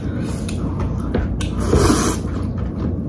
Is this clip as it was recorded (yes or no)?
yes